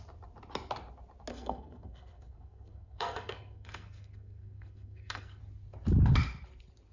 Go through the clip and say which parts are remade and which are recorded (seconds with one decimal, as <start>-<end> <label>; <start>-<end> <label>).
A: 0.0-1.3 recorded; 1.3-5.4 remade; 5.4-6.9 recorded